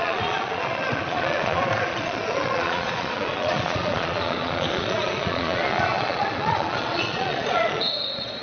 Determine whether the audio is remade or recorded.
remade